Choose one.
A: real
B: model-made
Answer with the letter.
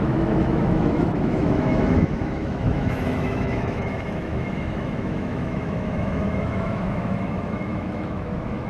B